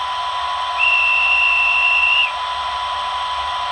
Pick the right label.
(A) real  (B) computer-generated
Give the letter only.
A